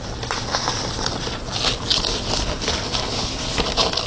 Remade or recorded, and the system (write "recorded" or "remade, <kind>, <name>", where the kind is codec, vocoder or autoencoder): recorded